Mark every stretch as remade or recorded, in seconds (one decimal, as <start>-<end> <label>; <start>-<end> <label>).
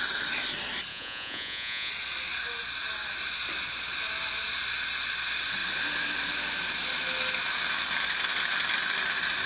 0.0-0.9 recorded; 0.9-1.9 remade; 1.9-9.5 recorded